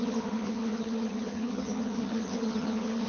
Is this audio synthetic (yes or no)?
yes